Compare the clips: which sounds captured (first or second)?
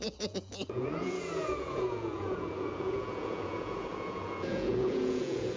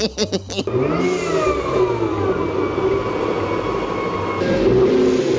second